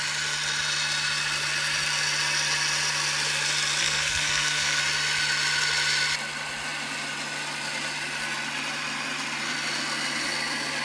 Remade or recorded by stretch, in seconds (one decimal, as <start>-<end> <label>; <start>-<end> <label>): 0.0-3.8 recorded; 3.8-4.8 remade; 4.8-10.8 recorded